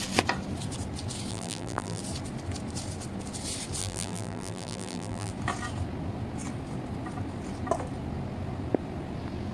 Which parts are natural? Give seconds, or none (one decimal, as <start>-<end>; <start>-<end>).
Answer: 0.0-1.3; 2.0-3.8; 5.3-9.5